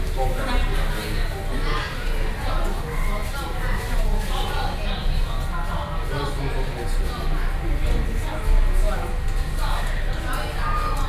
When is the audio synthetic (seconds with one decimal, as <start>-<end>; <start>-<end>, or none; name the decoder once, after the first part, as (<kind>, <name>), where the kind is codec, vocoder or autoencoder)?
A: none